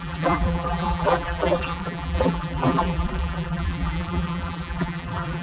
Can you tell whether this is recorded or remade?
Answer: remade